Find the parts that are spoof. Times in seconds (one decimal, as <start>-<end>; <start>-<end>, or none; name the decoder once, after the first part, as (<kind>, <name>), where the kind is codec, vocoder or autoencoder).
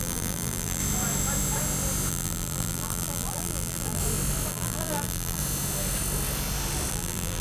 0.0-0.8 (vocoder, BigVGAN v2); 2.1-4.0; 4.5-5.4; 6.9-7.4